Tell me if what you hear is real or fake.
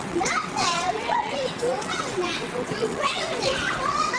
fake